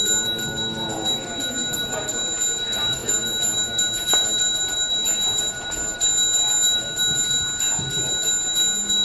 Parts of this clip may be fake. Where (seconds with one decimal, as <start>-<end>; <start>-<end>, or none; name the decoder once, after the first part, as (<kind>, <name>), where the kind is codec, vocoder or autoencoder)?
none